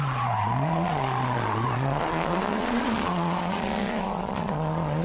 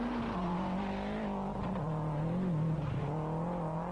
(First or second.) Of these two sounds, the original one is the second